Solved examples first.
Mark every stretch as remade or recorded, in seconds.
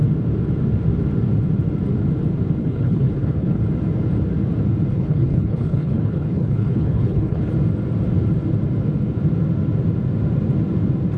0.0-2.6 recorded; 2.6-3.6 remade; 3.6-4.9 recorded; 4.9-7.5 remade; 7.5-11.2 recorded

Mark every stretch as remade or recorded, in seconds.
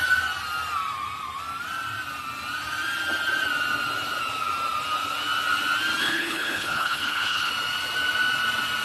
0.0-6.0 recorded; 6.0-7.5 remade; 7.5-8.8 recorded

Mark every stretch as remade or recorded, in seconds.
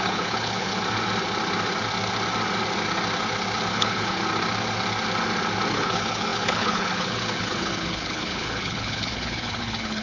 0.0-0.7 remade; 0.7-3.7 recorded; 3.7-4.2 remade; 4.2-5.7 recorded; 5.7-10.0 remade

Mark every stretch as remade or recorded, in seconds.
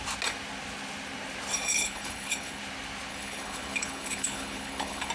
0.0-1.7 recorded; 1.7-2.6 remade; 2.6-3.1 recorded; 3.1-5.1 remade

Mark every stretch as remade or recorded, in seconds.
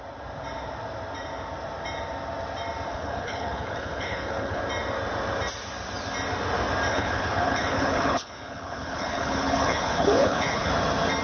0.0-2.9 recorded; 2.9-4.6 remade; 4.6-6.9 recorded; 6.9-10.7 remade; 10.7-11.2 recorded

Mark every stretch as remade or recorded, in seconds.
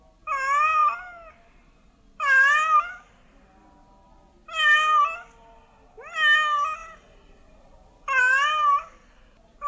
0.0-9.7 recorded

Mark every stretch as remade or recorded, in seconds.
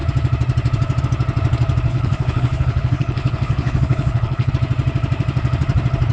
0.0-1.9 recorded; 1.9-4.5 remade; 4.5-6.1 recorded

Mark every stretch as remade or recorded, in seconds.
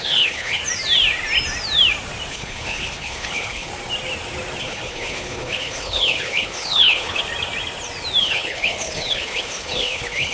0.0-0.6 remade; 0.6-2.3 recorded; 2.3-3.7 remade; 3.7-4.6 recorded; 4.6-7.2 remade; 7.2-8.2 recorded; 8.2-10.3 remade